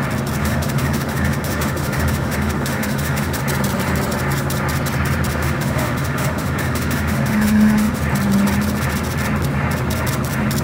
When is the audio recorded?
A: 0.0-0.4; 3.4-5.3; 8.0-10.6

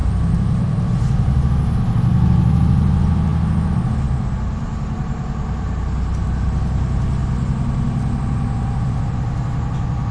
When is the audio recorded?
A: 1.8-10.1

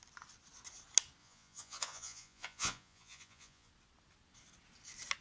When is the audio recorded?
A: 0.0-1.2; 3.7-5.2

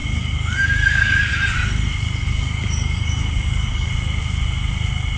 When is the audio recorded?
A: 1.3-2.2; 3.9-5.2

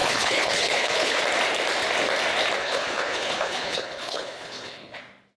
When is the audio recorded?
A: 1.2-2.6; 5.0-5.4